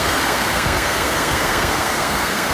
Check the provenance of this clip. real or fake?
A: fake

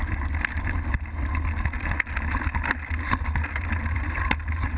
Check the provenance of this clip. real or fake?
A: real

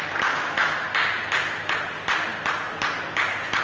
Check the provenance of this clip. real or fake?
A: real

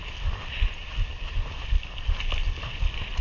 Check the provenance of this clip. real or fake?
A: real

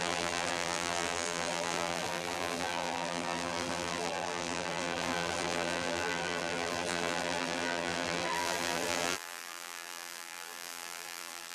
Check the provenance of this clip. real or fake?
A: fake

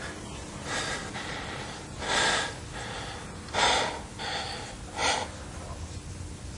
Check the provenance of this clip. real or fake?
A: real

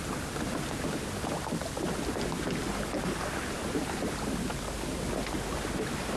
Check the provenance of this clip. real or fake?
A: real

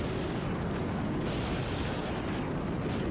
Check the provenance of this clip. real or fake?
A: real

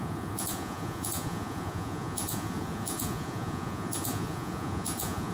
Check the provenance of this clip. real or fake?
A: fake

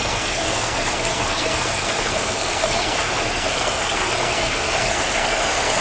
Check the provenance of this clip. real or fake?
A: fake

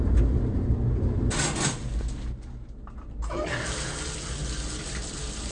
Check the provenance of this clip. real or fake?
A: real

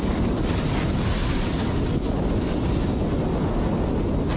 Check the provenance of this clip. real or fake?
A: real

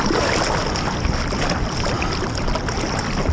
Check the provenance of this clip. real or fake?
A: real